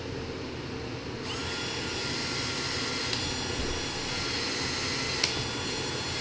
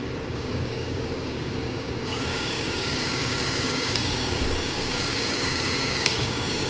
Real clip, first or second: first